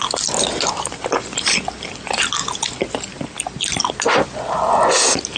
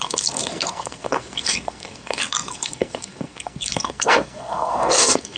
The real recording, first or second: first